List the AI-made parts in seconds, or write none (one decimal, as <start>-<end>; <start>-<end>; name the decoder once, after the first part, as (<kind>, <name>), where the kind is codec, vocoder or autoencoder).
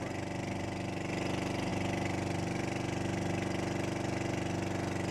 none